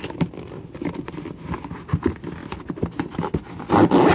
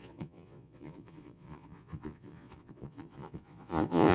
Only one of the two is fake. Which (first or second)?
second